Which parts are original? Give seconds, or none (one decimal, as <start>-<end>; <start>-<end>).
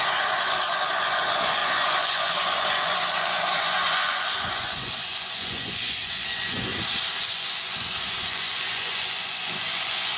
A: 6.7-7.2